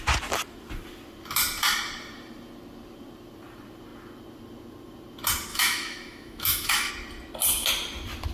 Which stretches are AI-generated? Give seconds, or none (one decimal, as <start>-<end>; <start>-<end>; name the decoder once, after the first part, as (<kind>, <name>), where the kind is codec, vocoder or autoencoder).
5.5-6.9 (autoencoder, DAC-VAE)